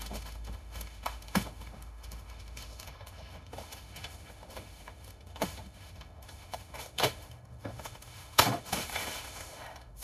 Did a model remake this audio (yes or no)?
yes